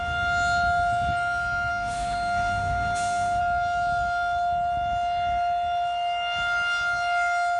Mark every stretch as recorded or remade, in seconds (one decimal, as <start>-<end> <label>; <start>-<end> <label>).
0.0-1.7 recorded; 1.7-3.4 remade; 3.4-7.6 recorded